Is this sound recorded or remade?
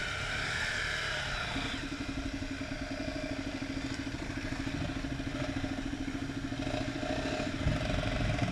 remade